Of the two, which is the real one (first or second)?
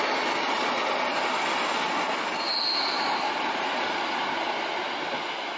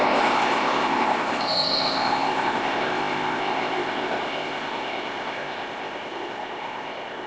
first